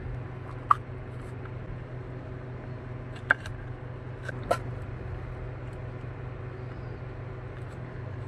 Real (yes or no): yes